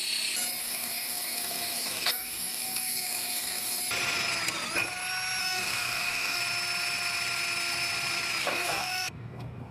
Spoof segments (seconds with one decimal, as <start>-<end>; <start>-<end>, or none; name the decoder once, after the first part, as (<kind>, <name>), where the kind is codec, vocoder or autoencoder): 0.6-3.8 (codec, DAC); 5.4-6.4; 8.4-9.7